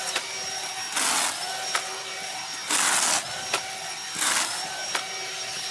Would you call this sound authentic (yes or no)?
yes